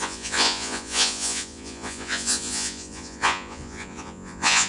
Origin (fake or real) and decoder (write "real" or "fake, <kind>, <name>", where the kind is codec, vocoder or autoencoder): fake, vocoder, Vocos